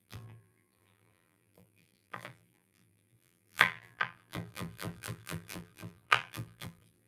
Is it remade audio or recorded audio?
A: remade